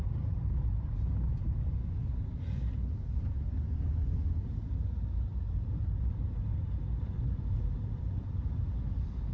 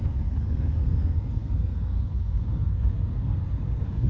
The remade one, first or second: second